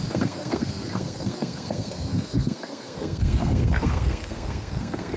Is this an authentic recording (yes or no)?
no